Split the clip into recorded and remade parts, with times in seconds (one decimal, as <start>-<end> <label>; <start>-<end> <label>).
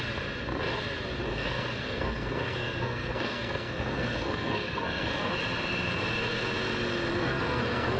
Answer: 0.0-1.3 recorded; 1.3-5.3 remade; 5.3-7.2 recorded; 7.2-8.0 remade